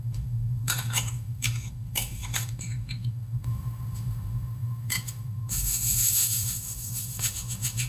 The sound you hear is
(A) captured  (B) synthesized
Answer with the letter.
B